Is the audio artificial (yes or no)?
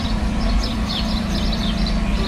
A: yes